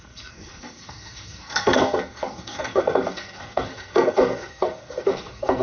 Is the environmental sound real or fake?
fake